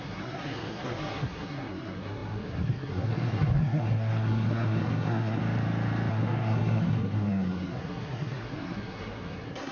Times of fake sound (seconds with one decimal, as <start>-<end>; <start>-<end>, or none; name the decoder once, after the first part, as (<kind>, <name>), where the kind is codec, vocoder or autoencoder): 0.0-5.4 (codec, SNAC); 6.1-9.7